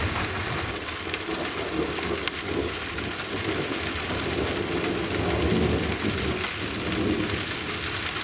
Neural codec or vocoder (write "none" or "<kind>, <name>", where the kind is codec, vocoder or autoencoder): none